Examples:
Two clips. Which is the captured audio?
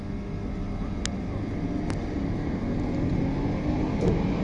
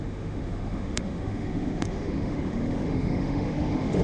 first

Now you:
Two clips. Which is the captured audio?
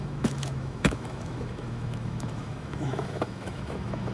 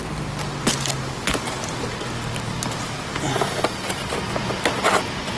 second